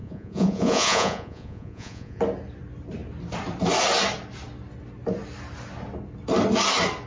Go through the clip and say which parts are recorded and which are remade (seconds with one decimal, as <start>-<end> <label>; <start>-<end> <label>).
0.0-2.2 remade; 2.2-7.1 recorded